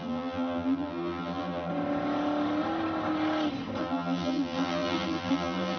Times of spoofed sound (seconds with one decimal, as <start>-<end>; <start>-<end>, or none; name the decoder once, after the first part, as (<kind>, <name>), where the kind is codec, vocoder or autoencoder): 0.0-1.7 (vocoder, BigVGAN v2); 3.8-5.8

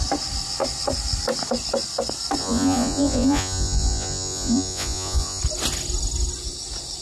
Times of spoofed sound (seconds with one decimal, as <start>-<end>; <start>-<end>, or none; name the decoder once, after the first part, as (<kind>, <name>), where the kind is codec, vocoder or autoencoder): 2.4-5.4 (vocoder, Vocos)

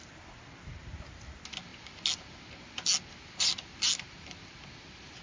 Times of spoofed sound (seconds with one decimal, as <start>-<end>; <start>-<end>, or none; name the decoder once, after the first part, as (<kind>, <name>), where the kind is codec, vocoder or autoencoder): none

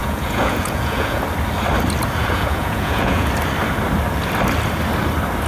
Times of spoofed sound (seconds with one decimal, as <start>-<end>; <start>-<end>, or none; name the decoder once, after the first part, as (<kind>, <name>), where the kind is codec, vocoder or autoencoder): 0.0-1.2 (vocoder, Vocos); 2.2-3.3

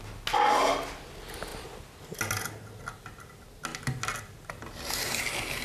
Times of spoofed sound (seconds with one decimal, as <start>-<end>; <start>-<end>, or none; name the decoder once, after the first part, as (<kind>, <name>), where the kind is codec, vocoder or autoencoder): none

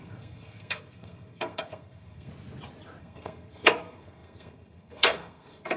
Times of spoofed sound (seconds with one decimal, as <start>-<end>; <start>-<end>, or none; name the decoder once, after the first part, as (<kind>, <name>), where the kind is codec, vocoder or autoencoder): 0.0-2.3 (codec, SNAC); 3.0-5.8

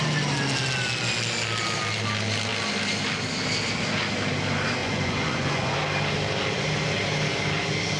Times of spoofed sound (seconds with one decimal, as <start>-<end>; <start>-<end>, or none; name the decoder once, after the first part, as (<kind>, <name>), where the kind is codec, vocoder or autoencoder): 4.8-5.8 (vocoder, Vocos)

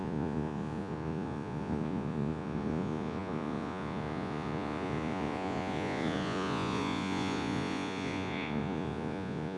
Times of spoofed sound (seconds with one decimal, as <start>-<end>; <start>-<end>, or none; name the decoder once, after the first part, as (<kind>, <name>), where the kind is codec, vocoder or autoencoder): 0.0-9.6 (vocoder, Vocos)